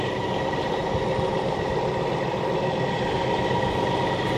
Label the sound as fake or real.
real